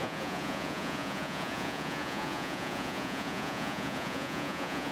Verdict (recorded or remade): remade